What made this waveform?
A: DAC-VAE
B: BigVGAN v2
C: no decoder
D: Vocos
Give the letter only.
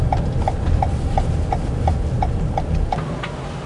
C